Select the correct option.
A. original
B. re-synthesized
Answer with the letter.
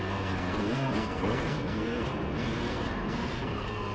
B